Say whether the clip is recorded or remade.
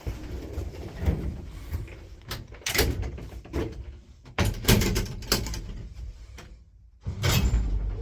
remade